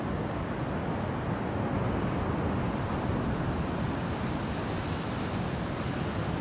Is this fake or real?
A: real